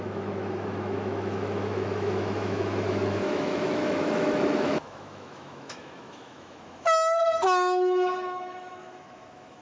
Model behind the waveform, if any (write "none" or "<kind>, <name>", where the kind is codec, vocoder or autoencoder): autoencoder, DAC-VAE